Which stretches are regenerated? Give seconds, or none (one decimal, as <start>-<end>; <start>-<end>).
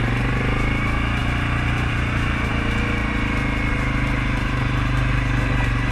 none